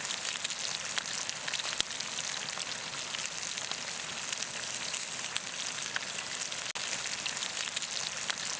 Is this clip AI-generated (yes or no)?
no